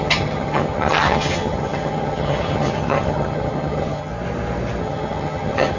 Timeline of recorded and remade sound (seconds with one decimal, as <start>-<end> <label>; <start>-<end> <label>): 0.0-4.1 remade; 4.1-4.8 recorded; 4.8-5.8 remade